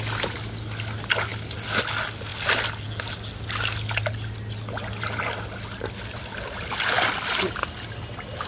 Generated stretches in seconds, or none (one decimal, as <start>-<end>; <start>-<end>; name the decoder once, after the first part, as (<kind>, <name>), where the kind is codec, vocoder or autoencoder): none